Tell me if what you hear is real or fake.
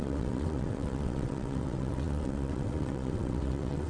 fake